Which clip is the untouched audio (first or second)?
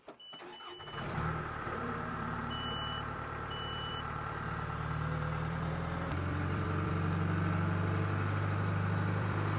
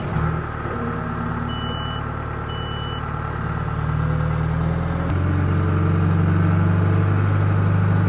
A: second